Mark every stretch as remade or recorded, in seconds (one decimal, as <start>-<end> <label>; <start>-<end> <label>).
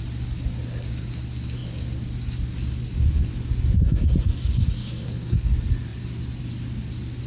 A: 0.0-4.8 recorded; 4.8-5.5 remade; 5.5-7.3 recorded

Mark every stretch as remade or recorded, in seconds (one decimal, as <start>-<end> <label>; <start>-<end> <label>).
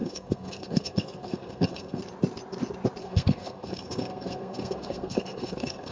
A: 0.0-2.0 remade; 2.0-3.0 recorded; 3.0-5.9 remade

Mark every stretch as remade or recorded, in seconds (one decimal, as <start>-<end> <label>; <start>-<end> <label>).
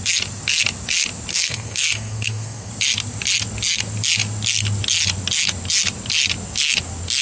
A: 0.0-1.3 recorded; 1.3-2.7 remade; 2.7-7.2 recorded